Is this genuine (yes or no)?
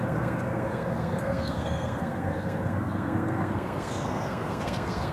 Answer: no